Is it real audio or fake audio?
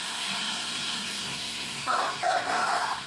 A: fake